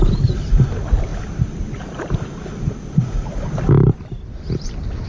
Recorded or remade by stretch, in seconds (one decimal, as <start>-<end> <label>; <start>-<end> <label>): 0.0-5.1 recorded